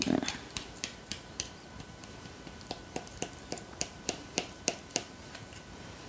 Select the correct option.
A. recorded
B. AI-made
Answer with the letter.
B